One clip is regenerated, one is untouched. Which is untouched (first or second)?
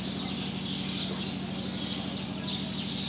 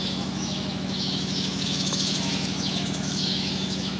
first